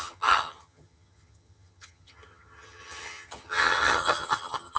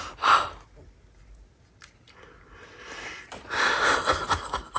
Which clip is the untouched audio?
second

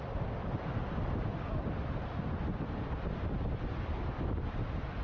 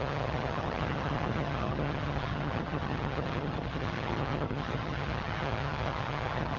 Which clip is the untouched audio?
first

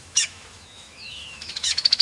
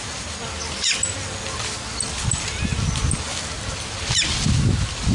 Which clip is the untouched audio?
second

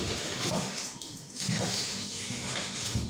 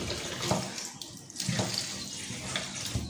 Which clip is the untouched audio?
second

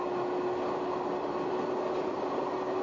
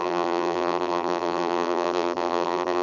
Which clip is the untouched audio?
first